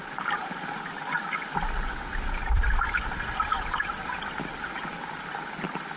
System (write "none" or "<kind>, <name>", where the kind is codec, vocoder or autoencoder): vocoder, BigVGAN v2